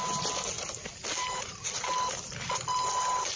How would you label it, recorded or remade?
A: recorded